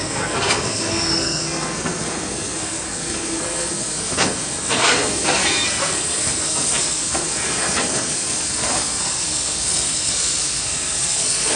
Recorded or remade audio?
remade